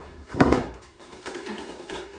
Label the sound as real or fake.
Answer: fake